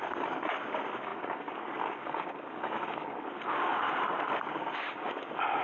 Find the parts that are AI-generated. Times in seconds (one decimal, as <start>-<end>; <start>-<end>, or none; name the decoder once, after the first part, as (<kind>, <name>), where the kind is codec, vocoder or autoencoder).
0.0-3.7 (codec, DAC); 4.4-5.6

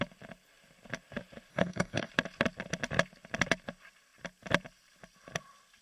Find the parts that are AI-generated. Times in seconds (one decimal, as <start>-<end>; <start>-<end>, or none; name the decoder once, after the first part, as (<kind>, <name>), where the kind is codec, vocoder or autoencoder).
1.5-2.1 (codec, DAC)